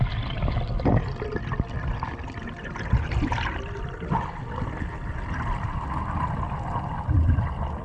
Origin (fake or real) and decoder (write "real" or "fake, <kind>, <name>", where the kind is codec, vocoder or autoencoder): real